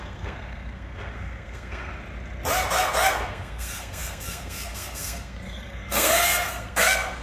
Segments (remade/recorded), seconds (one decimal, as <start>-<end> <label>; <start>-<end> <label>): 0.0-1.9 remade; 1.9-2.7 recorded; 2.7-7.2 remade